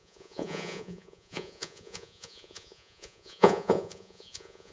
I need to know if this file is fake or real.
fake